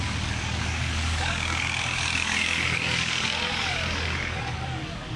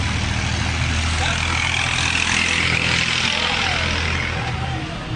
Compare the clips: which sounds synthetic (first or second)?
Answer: first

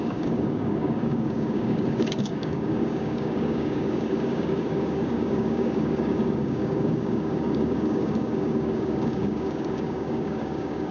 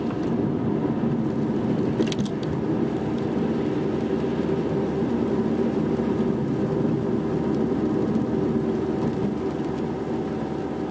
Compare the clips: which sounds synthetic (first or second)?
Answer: first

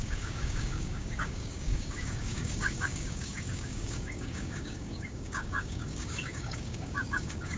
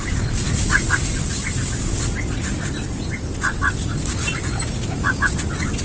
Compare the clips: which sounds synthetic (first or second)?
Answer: first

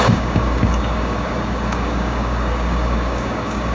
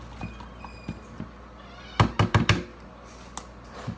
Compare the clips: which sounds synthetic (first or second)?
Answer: first